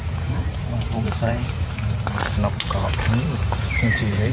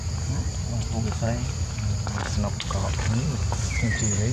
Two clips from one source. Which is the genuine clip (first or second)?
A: second